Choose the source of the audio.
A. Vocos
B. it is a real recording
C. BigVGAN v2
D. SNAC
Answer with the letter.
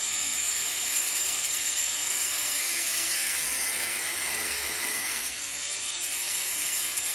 D